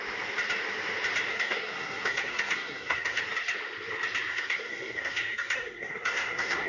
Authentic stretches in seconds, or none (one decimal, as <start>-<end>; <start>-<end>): 0.0-1.3; 3.2-4.3